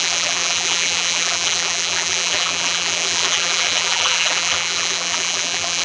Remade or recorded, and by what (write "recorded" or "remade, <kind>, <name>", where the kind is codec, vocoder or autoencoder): remade, vocoder, BigVGAN v2